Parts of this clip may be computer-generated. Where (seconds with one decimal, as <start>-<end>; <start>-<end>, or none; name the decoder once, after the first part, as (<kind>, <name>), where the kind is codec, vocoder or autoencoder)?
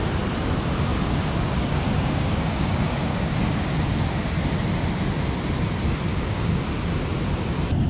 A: 0.9-3.6 (codec, DAC); 6.1-6.6